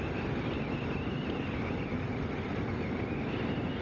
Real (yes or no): yes